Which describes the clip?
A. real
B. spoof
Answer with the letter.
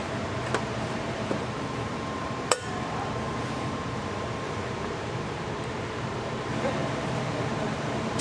B